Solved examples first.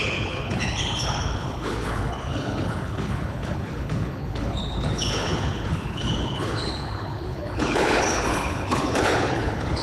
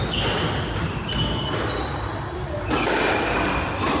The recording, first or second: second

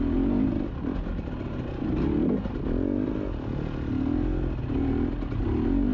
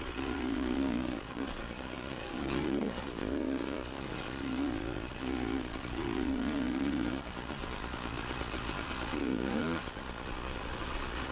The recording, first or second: first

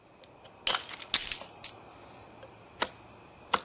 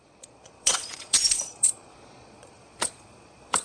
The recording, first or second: first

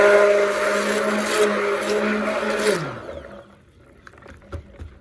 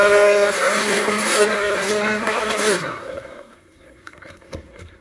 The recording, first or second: first